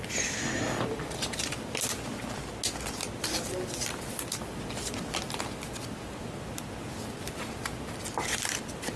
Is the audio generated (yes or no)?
no